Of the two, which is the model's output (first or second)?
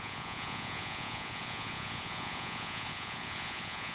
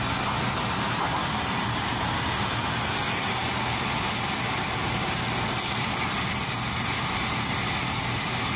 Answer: first